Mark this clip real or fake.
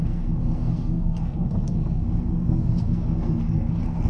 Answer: fake